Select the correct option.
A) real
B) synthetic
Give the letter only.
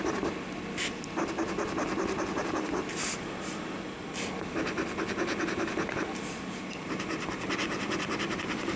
A